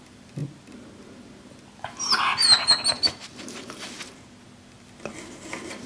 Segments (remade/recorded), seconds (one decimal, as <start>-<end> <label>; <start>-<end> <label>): 0.0-5.9 recorded

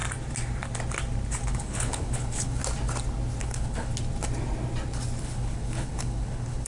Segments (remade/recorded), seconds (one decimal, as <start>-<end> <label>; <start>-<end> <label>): 0.0-1.5 recorded; 1.5-2.6 remade; 2.6-3.4 recorded; 3.4-3.9 remade; 3.9-5.2 recorded; 5.2-6.7 remade

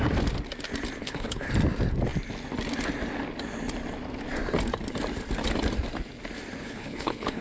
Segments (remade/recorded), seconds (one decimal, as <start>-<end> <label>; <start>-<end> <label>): 0.0-1.0 recorded; 1.0-1.5 remade; 1.5-6.6 recorded; 6.6-7.4 remade